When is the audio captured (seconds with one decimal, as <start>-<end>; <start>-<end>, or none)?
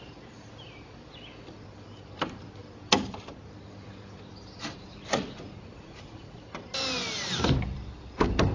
0.0-4.9; 6.4-8.5